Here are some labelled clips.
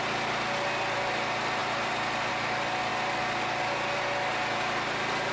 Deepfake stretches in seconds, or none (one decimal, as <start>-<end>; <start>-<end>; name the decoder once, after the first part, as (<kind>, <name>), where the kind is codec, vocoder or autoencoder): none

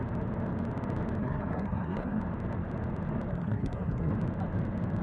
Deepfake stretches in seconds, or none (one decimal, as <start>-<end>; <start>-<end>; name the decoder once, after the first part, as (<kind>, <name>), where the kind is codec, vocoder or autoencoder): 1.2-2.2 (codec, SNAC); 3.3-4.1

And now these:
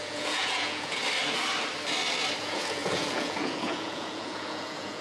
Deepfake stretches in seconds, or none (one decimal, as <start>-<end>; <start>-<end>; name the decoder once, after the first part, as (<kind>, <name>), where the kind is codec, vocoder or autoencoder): 0.0-1.0 (vocoder, Vocos); 2.4-5.0

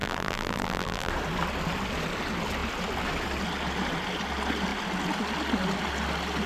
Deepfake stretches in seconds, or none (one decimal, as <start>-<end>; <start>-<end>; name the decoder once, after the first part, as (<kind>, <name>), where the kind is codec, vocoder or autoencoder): 0.0-1.1 (vocoder, BigVGAN v2)